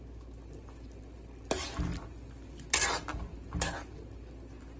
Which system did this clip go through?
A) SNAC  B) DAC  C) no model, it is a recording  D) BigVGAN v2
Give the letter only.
C